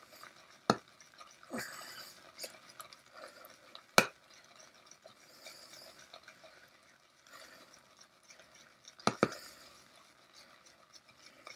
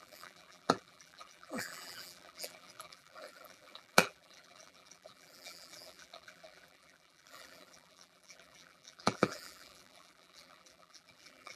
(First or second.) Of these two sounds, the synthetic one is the second